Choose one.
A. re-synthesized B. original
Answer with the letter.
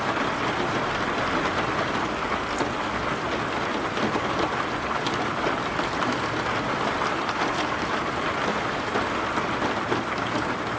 B